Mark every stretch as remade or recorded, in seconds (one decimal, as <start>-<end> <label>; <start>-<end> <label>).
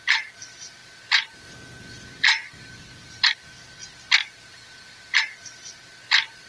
0.0-4.2 recorded; 4.2-5.2 remade; 5.2-6.5 recorded